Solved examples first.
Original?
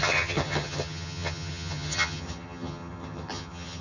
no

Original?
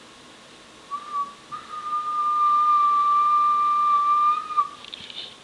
yes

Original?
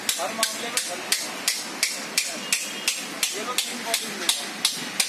yes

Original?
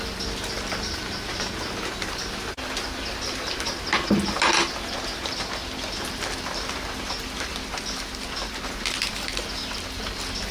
yes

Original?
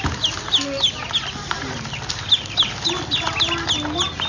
yes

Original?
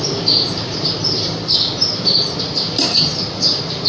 no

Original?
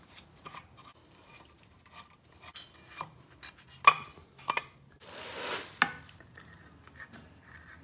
yes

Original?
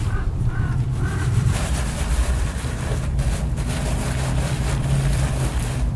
no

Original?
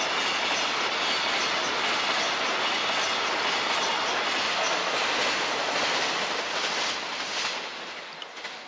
yes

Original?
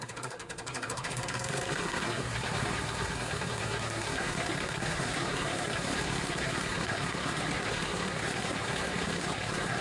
no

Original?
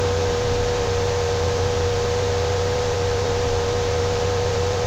no